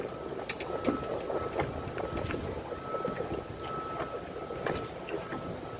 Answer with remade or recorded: recorded